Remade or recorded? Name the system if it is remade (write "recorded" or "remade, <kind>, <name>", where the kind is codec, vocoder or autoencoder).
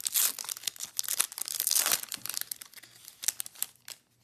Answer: recorded